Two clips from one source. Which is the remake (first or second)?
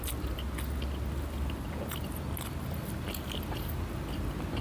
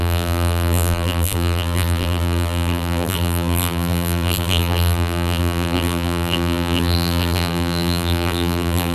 second